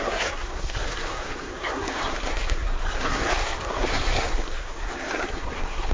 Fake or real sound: fake